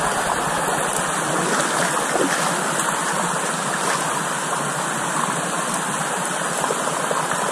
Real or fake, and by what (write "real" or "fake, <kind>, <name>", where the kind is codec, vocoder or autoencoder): real